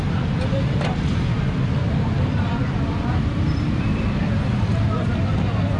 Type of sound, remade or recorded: remade